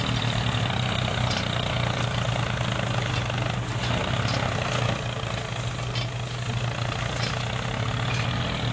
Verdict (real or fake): real